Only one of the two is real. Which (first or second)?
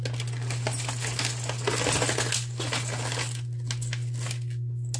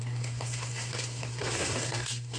first